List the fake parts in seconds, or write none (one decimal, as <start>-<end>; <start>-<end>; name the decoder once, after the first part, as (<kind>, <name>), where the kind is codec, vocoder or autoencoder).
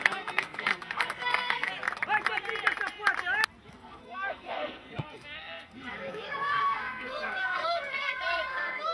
0.0-1.7 (codec, SNAC); 3.7-8.9